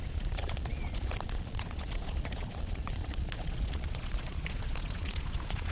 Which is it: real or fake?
fake